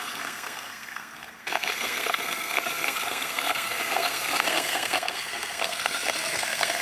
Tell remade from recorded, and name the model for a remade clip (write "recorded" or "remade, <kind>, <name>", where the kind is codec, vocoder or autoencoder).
remade, codec, SNAC